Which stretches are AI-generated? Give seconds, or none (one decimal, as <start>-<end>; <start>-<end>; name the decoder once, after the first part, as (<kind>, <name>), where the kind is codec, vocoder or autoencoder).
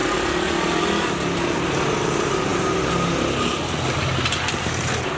none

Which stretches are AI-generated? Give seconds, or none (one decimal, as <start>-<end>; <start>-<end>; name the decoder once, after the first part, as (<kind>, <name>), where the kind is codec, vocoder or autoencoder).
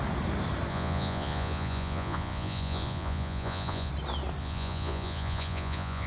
0.7-3.9 (vocoder, Vocos); 4.4-6.1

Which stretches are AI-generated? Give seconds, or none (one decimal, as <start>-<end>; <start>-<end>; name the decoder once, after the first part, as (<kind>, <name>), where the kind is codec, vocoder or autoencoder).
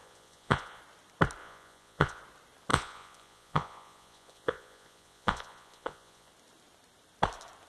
0.0-0.8 (vocoder, Vocos); 1.4-2.2; 2.7-6.3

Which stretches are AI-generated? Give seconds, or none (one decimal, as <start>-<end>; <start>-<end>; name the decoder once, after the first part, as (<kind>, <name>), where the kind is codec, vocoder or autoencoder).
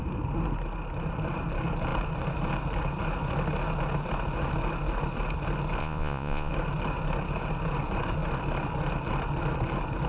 5.8-6.5 (vocoder, Vocos)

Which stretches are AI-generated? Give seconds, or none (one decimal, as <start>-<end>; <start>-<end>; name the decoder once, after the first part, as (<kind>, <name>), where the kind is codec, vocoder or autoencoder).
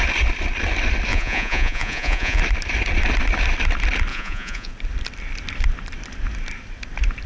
1.1-2.4 (vocoder, Vocos); 4.1-4.7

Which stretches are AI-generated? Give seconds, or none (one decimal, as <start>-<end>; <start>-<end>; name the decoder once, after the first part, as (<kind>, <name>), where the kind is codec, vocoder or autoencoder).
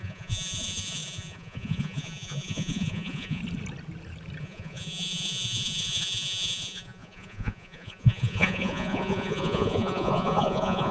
0.0-3.4 (vocoder, Vocos); 4.4-10.9